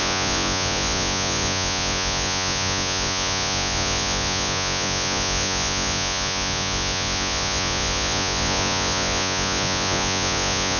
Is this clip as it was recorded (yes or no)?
no